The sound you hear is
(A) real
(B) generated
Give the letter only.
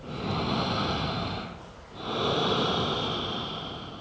A